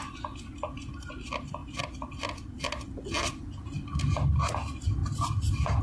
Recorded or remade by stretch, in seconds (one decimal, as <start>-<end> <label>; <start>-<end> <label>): 0.0-5.8 recorded